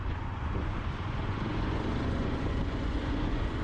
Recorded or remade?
remade